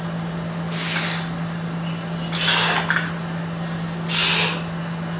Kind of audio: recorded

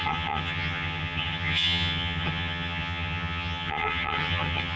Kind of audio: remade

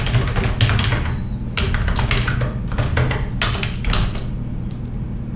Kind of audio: recorded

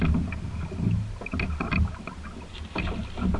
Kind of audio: recorded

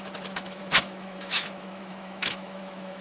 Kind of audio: remade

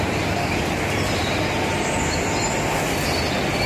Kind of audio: recorded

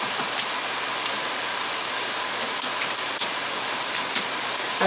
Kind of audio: remade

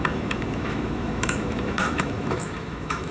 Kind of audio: remade